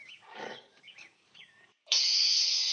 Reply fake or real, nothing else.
fake